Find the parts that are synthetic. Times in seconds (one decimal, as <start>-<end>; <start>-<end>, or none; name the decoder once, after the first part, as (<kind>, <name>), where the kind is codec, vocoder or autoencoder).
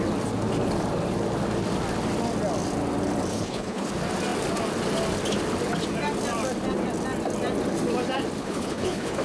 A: 3.3-3.9 (codec, HILCodec); 8.4-9.2